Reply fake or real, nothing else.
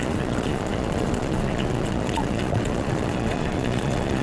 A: fake